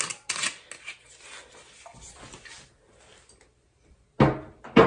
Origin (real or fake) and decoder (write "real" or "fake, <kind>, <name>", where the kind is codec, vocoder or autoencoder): real